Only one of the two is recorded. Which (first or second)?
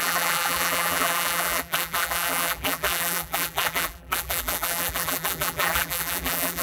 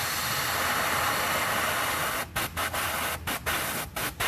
second